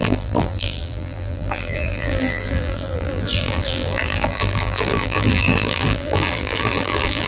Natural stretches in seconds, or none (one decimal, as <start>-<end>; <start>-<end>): none